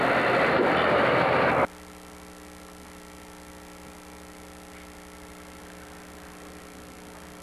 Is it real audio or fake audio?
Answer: real